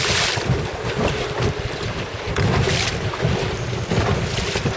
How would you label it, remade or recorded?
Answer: recorded